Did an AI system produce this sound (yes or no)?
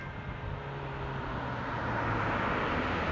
no